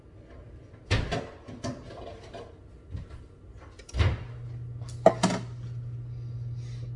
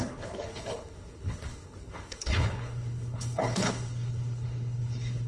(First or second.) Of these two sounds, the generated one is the second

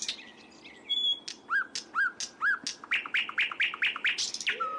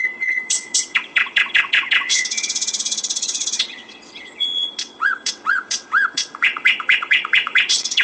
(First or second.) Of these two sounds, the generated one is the second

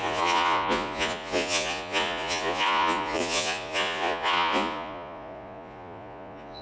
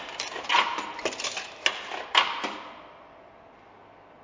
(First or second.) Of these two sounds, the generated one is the first